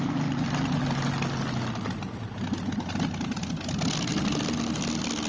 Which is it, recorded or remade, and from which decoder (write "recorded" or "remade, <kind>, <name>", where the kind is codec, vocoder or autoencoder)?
recorded